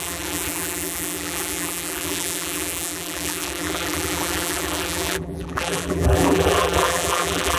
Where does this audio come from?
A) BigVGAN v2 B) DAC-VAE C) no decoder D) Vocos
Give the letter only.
A